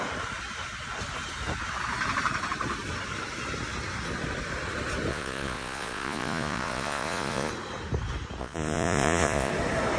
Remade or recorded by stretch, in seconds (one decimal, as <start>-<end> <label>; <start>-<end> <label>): 0.0-5.1 recorded; 5.1-7.5 remade; 7.5-8.4 recorded; 8.4-9.5 remade; 9.5-10.0 recorded

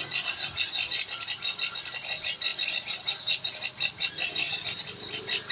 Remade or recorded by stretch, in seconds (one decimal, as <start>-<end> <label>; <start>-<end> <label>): 0.0-5.5 recorded

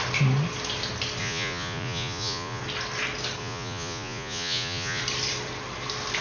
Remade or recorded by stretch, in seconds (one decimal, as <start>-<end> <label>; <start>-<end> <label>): 0.0-1.2 recorded; 1.2-2.6 remade; 2.6-3.4 recorded; 3.4-5.0 remade; 5.0-6.2 recorded

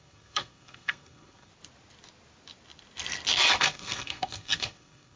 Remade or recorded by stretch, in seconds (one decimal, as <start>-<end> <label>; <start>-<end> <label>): 0.0-1.5 remade; 1.5-3.6 recorded; 3.6-5.2 remade

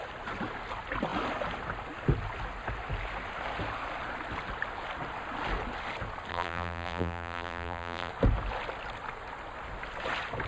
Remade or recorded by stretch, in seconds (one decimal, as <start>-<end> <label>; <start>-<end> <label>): 0.0-6.3 recorded; 6.3-8.1 remade; 8.1-10.5 recorded